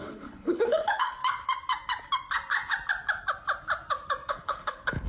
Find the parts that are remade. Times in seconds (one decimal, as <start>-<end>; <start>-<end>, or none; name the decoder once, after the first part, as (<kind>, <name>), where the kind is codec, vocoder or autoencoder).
0.0-1.2 (codec, HILCodec); 4.3-5.1